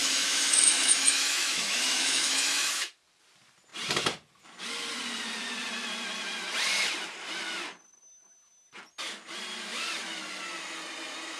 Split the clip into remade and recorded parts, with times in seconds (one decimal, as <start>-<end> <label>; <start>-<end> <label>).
0.0-2.9 remade; 2.9-11.4 recorded